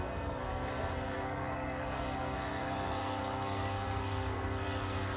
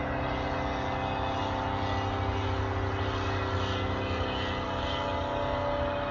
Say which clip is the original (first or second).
second